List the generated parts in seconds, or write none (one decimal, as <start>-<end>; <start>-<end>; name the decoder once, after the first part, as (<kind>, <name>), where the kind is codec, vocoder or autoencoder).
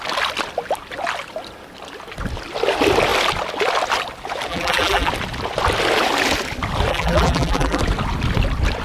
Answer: 4.5-5.1 (vocoder, BigVGAN v2); 6.9-7.8